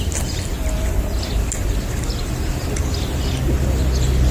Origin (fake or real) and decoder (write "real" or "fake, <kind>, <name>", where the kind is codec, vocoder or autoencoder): real